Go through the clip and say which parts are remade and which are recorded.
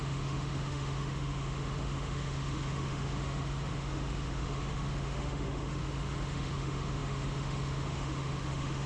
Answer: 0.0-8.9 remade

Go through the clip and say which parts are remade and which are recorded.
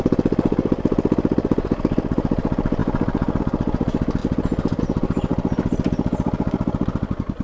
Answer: 0.0-7.4 recorded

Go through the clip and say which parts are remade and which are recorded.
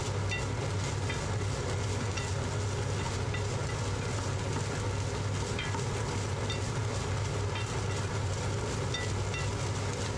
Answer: 0.0-10.2 recorded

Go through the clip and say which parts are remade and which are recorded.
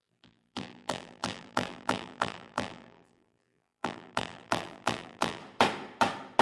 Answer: 0.0-5.4 remade; 5.4-6.4 recorded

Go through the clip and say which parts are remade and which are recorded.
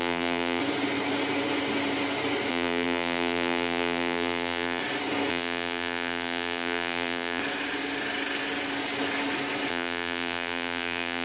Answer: 0.0-0.6 remade; 0.6-2.5 recorded; 2.5-4.8 remade; 4.8-5.3 recorded; 5.3-7.4 remade; 7.4-9.7 recorded; 9.7-11.2 remade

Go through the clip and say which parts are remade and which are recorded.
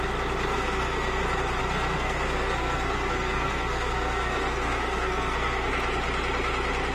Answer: 0.0-0.5 recorded; 0.5-1.2 remade; 1.2-1.6 recorded; 1.6-5.7 remade; 5.7-6.9 recorded